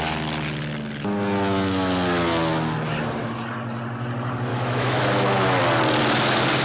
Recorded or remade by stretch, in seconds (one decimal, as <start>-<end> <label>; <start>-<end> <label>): 0.0-4.5 recorded; 4.5-5.6 remade; 5.6-6.6 recorded